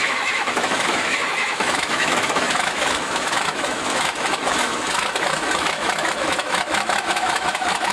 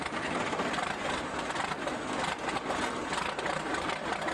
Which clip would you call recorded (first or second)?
second